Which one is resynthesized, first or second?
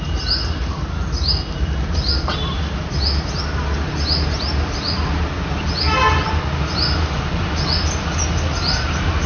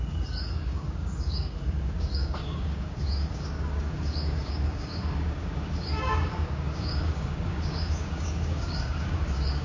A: second